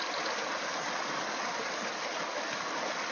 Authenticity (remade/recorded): recorded